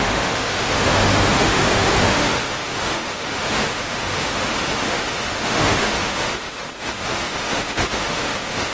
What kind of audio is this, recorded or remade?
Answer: remade